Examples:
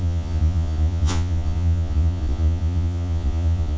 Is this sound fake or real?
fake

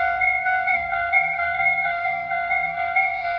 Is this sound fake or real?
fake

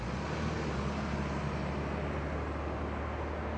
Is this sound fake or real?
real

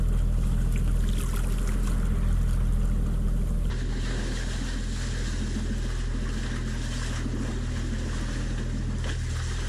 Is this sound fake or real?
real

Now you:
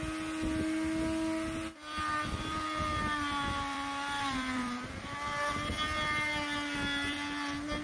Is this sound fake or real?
real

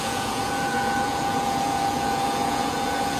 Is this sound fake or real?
fake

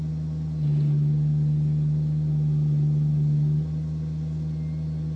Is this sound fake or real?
real